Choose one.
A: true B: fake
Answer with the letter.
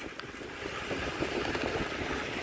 A